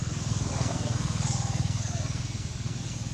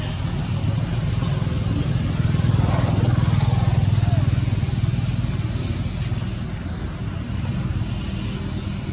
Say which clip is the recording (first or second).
second